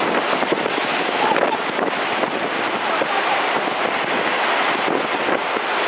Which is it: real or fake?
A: real